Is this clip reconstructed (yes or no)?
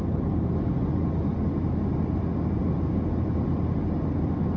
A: no